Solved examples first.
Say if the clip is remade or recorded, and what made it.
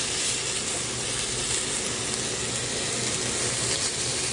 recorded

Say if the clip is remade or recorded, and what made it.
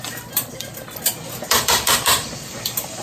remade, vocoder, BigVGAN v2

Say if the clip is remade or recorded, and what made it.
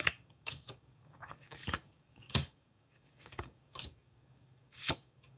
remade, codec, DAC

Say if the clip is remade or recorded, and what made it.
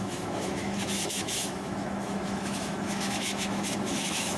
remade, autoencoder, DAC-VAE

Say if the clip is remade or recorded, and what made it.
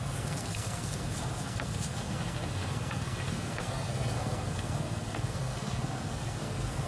remade, codec, SNAC